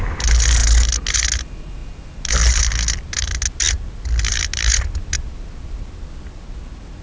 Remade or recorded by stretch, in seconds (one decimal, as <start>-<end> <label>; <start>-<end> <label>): 0.0-7.0 recorded